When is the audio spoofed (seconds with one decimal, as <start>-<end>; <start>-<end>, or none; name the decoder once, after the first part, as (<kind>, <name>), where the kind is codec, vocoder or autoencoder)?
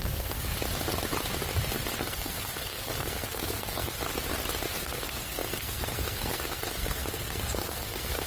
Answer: 0.0-0.5 (codec, SNAC); 2.0-4.0; 4.8-8.3